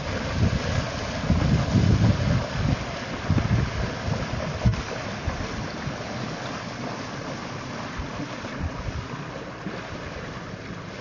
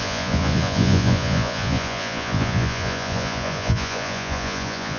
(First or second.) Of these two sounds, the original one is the first